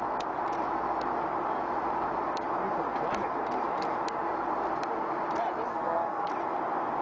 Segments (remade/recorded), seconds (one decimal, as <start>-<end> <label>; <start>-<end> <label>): 0.0-5.7 recorded; 5.7-6.3 remade; 6.3-7.0 recorded